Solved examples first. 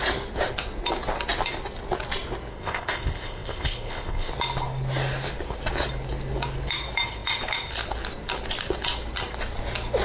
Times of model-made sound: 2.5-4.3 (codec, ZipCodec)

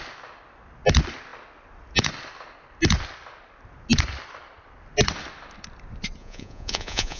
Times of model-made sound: 6.2-7.2 (vocoder, Vocos)

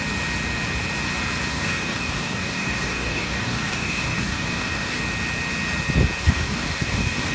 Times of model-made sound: 1.5-5.0 (codec, DAC); 6.2-7.3

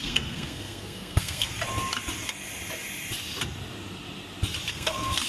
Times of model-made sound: 0.0-1.5 (codec, SNAC); 4.7-5.3

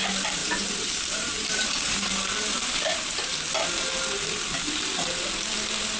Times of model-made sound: 0.4-2.1 (vocoder, BigVGAN v2); 2.9-3.5

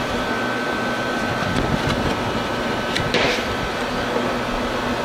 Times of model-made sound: 2.5-3.8 (vocoder, BigVGAN v2)

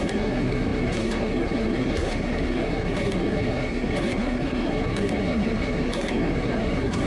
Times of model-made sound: 0.0-7.1 (codec, SNAC)